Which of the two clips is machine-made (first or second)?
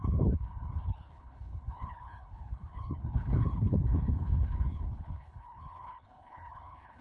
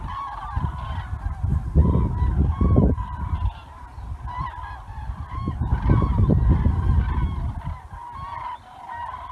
first